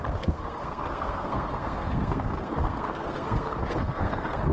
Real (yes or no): no